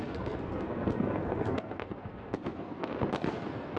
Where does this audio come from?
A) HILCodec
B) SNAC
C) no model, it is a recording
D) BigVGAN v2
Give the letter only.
B